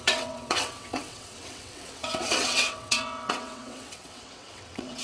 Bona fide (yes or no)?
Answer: no